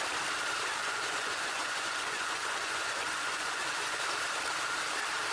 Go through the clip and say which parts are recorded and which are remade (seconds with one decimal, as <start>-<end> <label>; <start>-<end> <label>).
0.0-0.8 recorded; 0.8-4.0 remade; 4.0-5.3 recorded